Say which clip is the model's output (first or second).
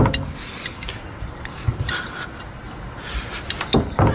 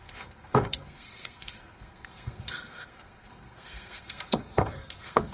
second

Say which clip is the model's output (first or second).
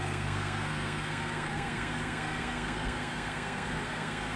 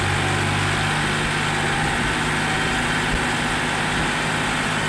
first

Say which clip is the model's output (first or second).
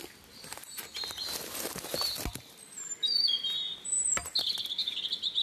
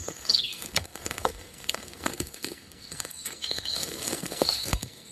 second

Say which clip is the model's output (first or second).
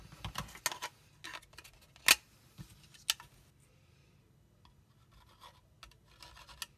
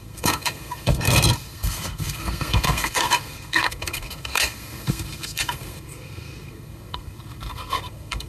second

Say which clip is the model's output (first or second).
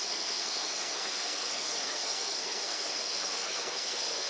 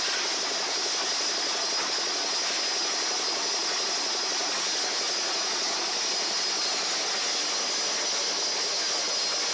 first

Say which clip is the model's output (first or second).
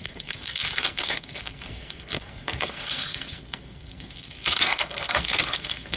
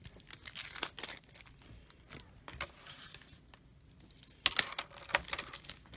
first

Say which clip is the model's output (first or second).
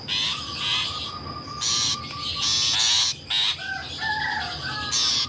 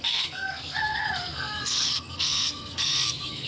second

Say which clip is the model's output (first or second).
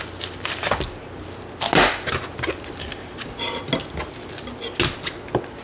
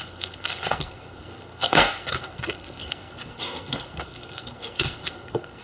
second